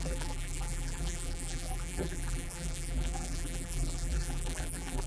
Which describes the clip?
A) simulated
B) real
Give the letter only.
A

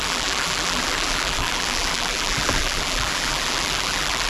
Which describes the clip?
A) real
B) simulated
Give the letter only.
B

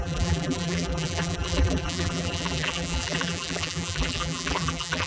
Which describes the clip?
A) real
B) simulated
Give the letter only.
B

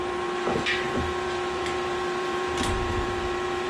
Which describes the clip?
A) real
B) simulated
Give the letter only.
B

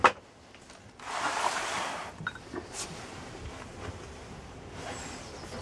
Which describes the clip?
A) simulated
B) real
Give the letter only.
B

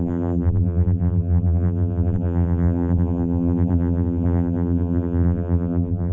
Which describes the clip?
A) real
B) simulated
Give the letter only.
B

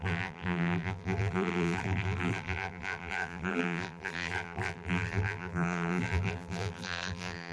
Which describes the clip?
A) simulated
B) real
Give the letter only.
A